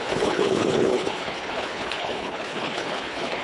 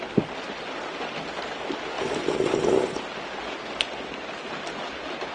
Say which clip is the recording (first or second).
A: second